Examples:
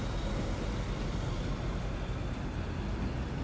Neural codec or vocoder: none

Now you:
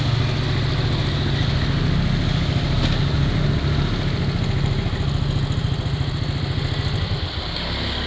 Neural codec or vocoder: none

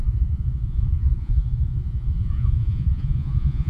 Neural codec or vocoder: vocoder, Vocos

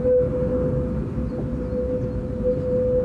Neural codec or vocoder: none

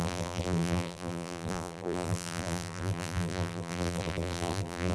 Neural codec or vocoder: vocoder, BigVGAN v2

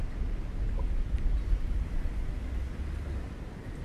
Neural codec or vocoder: none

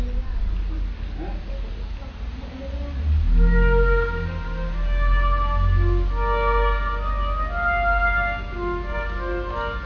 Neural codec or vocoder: none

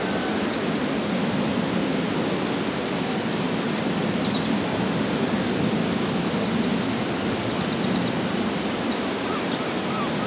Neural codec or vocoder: none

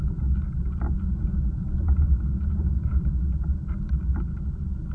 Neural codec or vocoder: none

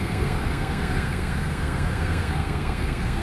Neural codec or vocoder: codec, SNAC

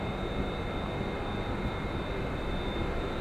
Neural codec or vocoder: none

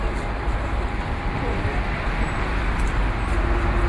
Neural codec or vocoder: none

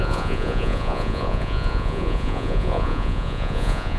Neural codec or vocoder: vocoder, Vocos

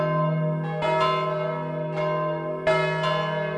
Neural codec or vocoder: none